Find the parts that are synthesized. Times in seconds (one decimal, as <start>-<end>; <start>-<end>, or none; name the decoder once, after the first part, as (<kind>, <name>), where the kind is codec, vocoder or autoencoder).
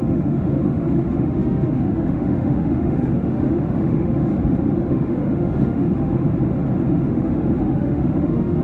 0.0-4.3 (autoencoder, DAC-VAE); 4.9-6.3; 6.9-8.6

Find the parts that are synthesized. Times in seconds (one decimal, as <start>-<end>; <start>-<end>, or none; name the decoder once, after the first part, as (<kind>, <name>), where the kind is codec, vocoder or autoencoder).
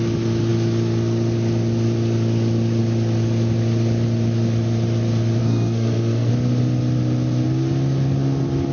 5.4-6.3 (codec, SNAC)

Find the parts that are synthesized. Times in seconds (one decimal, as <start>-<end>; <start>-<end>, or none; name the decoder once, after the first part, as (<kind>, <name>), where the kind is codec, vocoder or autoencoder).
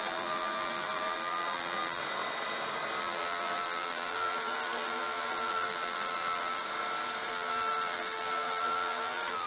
0.0-2.0 (vocoder, BigVGAN v2); 3.0-6.6; 7.3-9.5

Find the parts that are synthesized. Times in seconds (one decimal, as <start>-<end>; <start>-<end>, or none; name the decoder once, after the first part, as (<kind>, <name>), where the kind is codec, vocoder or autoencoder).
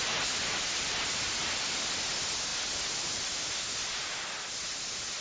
none